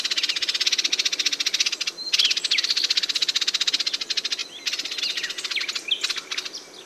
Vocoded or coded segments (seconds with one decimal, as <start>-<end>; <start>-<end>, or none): none